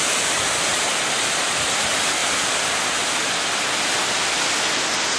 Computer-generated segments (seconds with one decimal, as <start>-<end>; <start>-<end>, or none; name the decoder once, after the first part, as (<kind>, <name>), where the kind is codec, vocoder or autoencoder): 2.2-4.6 (vocoder, BigVGAN v2)